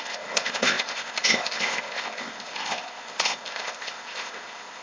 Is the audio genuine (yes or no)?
no